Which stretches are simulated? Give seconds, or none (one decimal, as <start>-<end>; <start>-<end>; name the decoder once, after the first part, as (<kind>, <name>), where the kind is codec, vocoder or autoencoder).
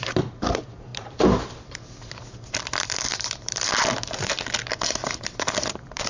0.0-6.1 (vocoder, BigVGAN v2)